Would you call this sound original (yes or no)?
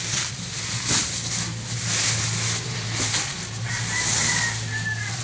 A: yes